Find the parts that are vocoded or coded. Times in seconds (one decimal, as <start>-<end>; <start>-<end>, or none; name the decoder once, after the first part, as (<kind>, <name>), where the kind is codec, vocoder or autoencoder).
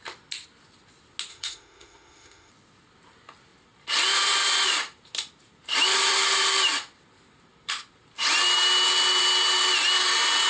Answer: 1.3-2.5 (autoencoder, DAC-VAE)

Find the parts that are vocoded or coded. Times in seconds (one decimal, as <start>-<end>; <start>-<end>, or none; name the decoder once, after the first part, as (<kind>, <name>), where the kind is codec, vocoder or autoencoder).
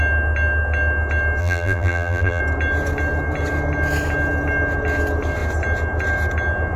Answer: 1.4-2.4 (vocoder, BigVGAN v2)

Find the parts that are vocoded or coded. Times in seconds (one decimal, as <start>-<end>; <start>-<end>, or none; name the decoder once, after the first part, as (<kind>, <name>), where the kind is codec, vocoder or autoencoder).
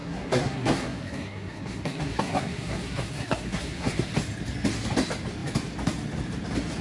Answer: 0.0-4.1 (codec, SNAC)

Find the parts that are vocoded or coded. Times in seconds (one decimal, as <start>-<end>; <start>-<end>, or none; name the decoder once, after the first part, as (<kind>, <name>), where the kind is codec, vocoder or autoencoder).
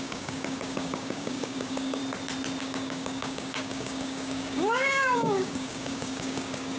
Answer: 0.0-2.0 (codec, DAC); 2.6-6.8